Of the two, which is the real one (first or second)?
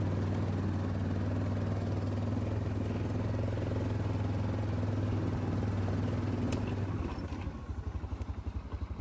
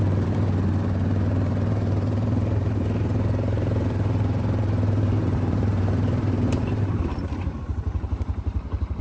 first